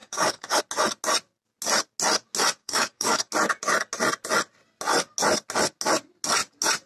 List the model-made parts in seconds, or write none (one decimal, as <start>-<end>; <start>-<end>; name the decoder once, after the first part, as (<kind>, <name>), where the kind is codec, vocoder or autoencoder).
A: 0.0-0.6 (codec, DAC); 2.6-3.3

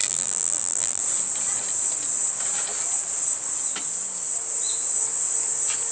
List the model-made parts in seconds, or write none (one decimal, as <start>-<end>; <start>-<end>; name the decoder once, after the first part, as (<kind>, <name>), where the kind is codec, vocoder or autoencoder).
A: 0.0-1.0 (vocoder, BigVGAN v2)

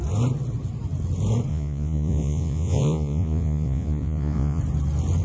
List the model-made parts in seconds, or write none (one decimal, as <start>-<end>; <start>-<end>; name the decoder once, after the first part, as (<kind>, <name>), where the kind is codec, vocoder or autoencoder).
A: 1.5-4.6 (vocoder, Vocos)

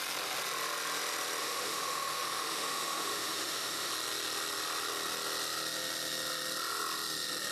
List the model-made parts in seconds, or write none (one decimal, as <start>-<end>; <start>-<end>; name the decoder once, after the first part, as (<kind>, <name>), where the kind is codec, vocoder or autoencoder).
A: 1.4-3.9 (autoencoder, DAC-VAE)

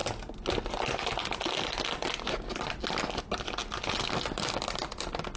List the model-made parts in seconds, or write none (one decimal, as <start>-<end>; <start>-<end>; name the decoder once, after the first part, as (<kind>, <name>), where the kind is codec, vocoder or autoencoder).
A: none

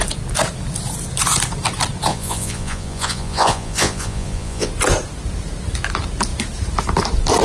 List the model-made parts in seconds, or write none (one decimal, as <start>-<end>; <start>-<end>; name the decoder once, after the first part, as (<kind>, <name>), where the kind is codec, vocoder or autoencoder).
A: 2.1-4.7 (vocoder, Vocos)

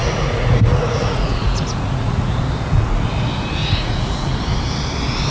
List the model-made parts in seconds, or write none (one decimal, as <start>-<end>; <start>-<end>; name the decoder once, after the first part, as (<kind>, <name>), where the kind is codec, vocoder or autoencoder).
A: 0.0-2.4 (vocoder, Vocos); 3.6-4.4